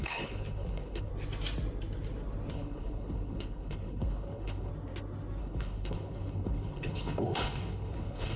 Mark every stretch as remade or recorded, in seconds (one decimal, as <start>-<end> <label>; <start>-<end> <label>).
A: 0.0-1.1 remade; 1.1-2.5 recorded; 2.5-4.7 remade; 4.7-5.4 recorded; 5.4-8.4 remade